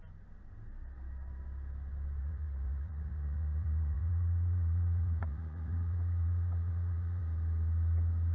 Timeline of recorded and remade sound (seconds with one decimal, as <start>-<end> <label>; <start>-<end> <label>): 0.0-2.2 recorded; 2.2-7.2 remade; 7.2-8.3 recorded